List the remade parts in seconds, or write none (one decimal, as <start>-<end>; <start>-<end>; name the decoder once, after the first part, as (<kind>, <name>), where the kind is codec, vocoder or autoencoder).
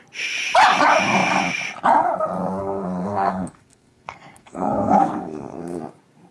2.6-5.8 (codec, SNAC)